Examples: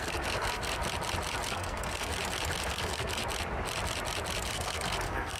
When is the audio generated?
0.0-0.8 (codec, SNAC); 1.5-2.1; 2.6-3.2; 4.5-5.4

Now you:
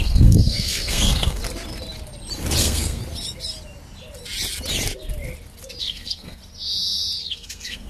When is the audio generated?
0.0-1.4 (codec, SNAC); 2.6-3.0; 5.8-6.4; 7.2-7.9

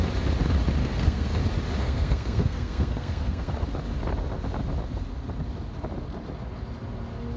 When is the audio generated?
0.8-1.4 (codec, SNAC); 1.8-3.5